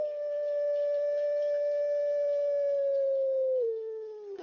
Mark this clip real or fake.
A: real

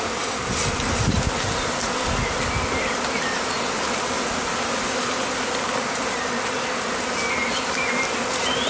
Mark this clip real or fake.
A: real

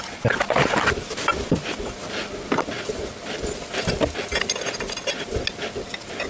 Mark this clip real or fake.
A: real